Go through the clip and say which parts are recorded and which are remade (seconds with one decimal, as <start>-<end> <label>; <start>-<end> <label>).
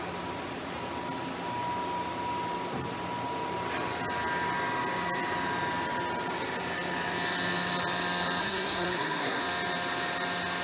0.0-8.4 recorded; 8.4-9.4 remade; 9.4-10.6 recorded